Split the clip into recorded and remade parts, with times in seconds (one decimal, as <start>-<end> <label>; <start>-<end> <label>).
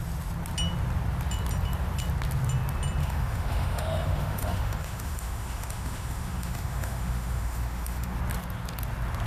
0.0-3.0 recorded; 3.0-8.2 remade; 8.2-9.3 recorded